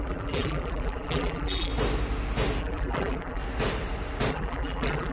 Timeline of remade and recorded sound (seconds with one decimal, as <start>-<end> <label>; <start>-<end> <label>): 0.0-1.7 remade; 1.7-2.6 recorded; 2.6-3.4 remade; 3.4-4.3 recorded; 4.3-5.1 remade